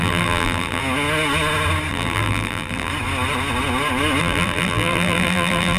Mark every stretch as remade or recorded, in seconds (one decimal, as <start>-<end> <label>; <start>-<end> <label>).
0.0-0.8 remade; 0.8-1.9 recorded; 1.9-2.9 remade; 2.9-4.2 recorded; 4.2-5.8 remade